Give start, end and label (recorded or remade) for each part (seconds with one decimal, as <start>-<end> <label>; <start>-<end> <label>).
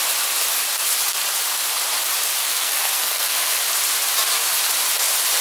0.0-2.4 recorded; 2.4-3.6 remade; 3.6-5.4 recorded